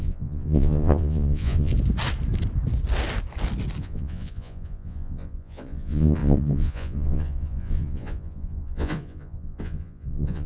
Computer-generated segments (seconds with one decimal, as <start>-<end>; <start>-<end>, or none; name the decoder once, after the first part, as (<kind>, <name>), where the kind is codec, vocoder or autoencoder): 0.0-1.7 (vocoder, Vocos); 3.8-10.5